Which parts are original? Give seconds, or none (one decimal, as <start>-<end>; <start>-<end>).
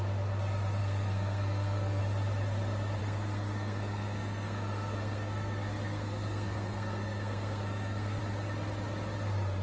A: 0.0-0.8; 2.0-3.0; 8.2-9.6